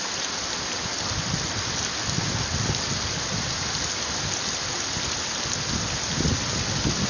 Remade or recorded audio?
recorded